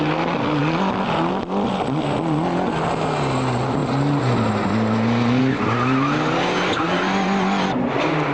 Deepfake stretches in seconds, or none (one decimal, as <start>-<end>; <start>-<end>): none